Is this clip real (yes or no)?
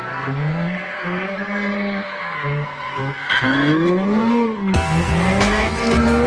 no